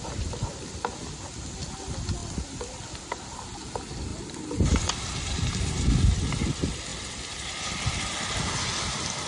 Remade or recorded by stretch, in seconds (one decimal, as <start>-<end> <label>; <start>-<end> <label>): 0.0-4.1 recorded; 4.1-5.5 remade; 5.5-9.3 recorded